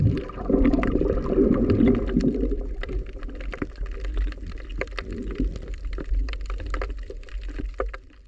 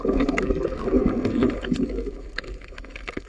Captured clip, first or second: first